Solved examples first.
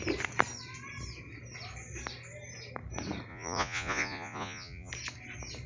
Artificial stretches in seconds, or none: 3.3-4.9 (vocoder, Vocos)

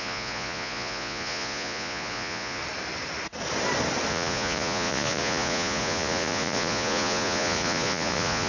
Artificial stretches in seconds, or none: 0.0-2.6 (vocoder, Vocos); 4.1-8.5

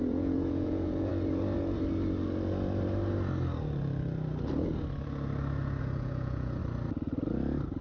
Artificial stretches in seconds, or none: 0.0-1.1 (vocoder, Vocos); 5.8-6.6

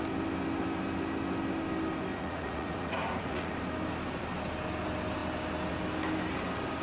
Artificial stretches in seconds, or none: 2.1-3.5 (vocoder, Vocos)

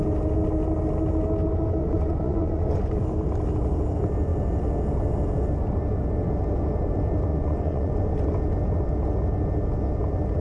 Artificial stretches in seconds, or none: 1.8-2.9 (vocoder, Vocos); 7.3-8.1